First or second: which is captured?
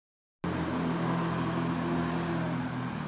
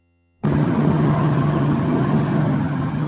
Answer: first